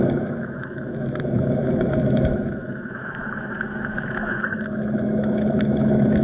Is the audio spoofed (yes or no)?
yes